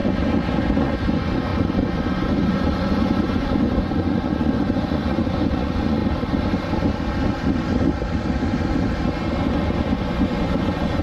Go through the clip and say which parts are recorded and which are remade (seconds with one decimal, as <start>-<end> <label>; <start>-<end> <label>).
0.0-0.6 recorded; 0.6-6.0 remade; 6.0-9.4 recorded; 9.4-11.0 remade